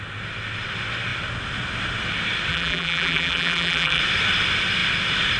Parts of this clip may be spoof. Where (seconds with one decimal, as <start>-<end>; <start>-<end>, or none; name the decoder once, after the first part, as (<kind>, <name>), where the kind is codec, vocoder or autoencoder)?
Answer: 2.5-4.0 (vocoder, BigVGAN v2)